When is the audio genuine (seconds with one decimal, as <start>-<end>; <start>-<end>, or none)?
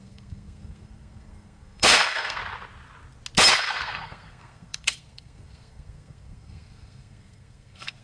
2.4-3.5